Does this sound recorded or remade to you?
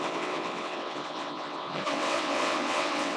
remade